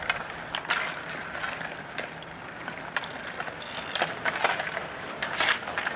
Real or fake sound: real